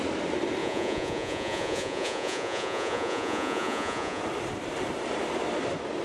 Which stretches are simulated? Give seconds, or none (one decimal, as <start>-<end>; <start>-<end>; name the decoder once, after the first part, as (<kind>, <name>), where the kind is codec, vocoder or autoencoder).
0.6-4.2 (vocoder, Vocos)